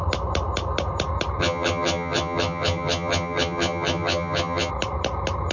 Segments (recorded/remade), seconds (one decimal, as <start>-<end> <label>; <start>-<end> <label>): 0.0-1.4 recorded; 1.4-4.7 remade; 4.7-5.5 recorded